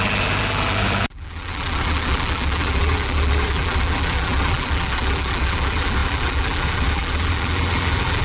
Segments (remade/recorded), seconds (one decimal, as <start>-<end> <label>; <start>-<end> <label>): 0.0-8.2 remade